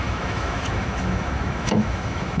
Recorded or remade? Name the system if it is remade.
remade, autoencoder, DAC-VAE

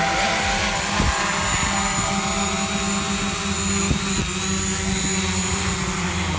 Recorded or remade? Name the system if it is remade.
recorded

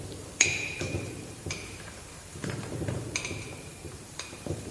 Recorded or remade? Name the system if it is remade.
remade, vocoder, BigVGAN v2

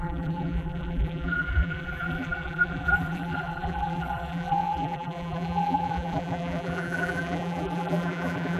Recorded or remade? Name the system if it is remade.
remade, vocoder, BigVGAN v2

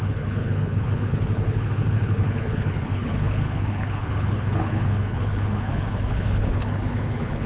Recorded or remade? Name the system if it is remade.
remade, codec, HILCodec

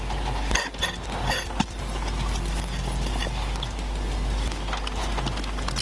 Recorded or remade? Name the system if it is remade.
recorded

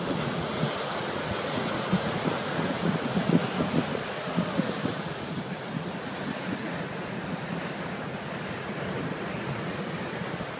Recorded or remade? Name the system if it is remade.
remade, vocoder, Vocos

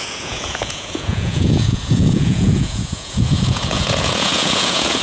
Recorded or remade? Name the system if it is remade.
remade, vocoder, Vocos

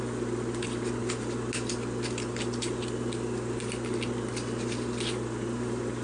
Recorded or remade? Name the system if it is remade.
recorded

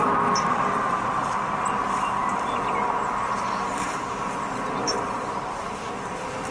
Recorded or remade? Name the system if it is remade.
recorded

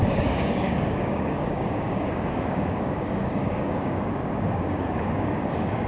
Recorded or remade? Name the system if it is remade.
remade, codec, DAC